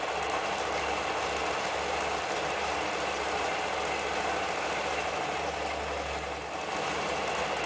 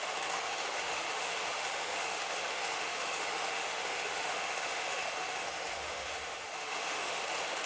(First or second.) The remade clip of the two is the second